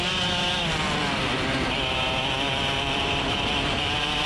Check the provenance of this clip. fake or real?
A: real